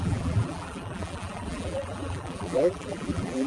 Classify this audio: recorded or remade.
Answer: remade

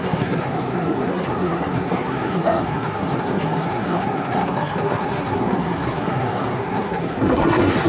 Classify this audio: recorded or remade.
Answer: remade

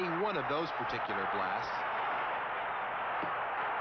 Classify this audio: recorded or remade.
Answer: recorded